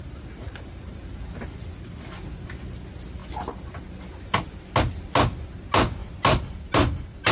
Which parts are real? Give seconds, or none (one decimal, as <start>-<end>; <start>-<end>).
0.0-7.3